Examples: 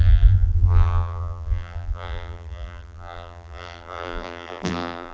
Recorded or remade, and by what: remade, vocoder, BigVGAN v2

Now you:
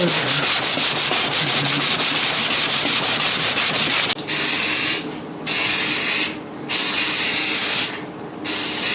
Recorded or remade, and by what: recorded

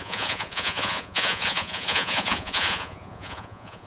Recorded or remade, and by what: remade, vocoder, Vocos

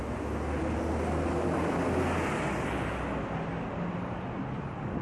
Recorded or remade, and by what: recorded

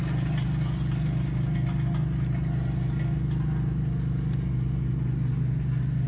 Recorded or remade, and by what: recorded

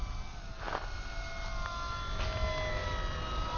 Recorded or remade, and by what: recorded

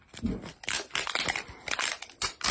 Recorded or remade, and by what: recorded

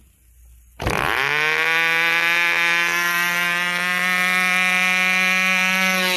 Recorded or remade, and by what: recorded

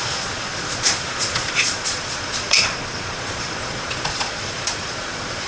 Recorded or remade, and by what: remade, vocoder, Vocos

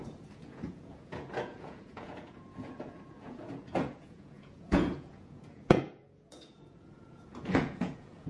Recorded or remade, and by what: remade, vocoder, Vocos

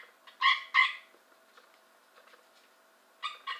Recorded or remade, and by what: recorded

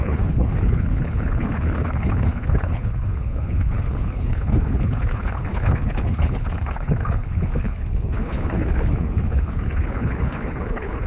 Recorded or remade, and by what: remade, codec, HILCodec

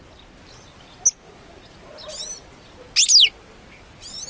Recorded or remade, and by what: recorded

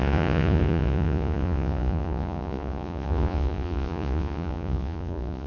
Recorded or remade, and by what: remade, vocoder, Vocos